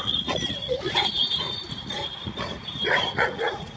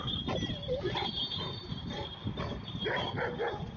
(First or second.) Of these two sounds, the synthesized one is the first